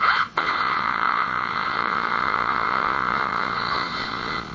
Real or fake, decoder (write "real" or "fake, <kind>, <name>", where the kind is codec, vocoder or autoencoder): fake, vocoder, Vocos